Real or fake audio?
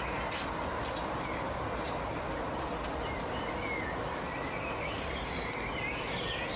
real